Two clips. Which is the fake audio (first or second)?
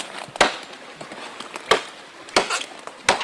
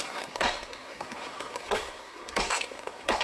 second